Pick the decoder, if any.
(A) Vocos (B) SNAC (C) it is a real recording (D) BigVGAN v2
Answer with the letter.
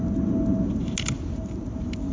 C